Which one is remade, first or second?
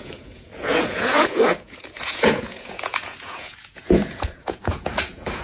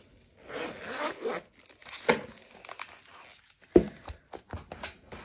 first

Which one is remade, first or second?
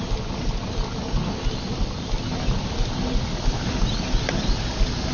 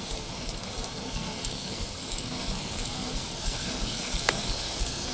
second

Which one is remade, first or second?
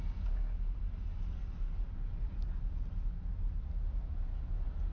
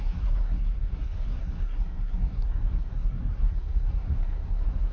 second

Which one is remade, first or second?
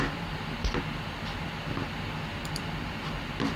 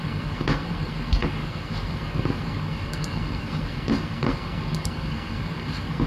second